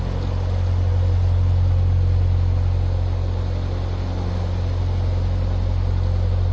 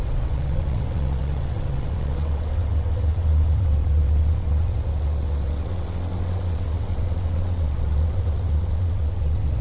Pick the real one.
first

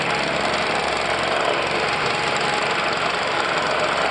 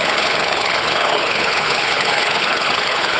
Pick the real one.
first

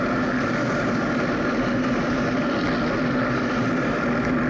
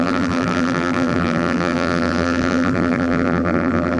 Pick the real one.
first